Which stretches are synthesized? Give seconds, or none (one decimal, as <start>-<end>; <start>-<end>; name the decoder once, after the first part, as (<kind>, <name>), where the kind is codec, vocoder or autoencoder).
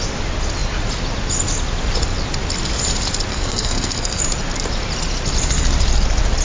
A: 3.3-4.2 (codec, SNAC)